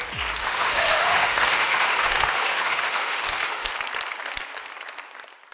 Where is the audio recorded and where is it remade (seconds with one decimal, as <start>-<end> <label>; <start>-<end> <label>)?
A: 0.0-0.4 recorded; 0.4-3.7 remade; 3.7-5.5 recorded